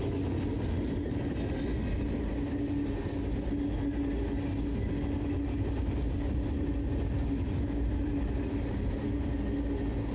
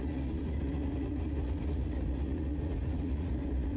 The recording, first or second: first